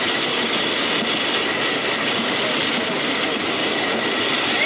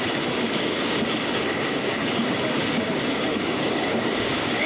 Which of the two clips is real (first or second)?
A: first